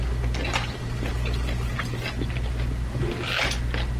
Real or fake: real